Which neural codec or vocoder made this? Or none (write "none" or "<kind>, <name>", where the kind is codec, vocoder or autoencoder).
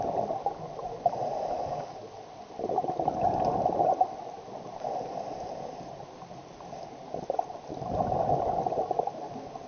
none